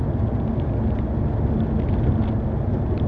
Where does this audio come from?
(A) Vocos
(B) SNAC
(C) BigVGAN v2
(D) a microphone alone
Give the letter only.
D